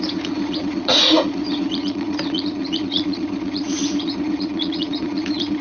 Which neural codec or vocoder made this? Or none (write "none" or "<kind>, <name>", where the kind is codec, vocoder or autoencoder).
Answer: vocoder, Vocos